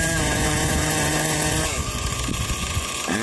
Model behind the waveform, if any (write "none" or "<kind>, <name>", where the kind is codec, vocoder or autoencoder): vocoder, Vocos